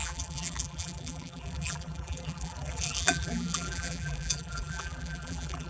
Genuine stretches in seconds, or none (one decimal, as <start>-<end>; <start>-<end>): none